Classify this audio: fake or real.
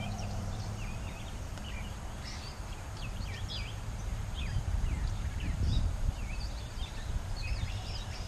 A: fake